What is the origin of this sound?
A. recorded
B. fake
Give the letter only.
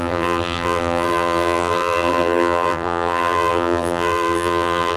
B